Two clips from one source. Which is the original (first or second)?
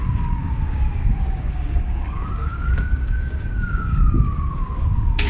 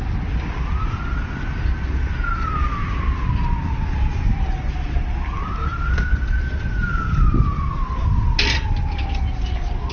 second